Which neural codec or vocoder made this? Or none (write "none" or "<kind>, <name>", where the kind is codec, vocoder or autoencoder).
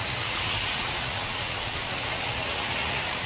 vocoder, Vocos